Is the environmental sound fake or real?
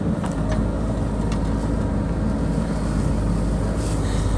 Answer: real